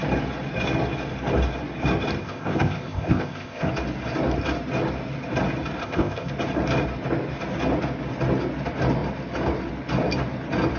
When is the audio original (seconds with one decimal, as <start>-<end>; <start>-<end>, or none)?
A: 0.0-2.2; 3.7-5.8; 6.3-10.8